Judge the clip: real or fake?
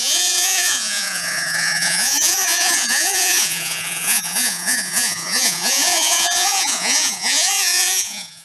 fake